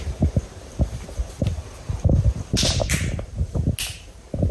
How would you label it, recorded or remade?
recorded